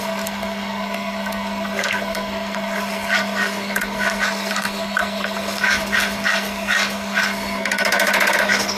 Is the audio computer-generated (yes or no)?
yes